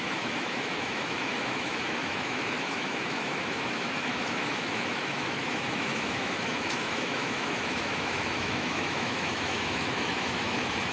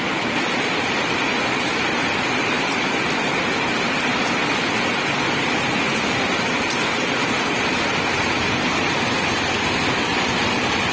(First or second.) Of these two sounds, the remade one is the first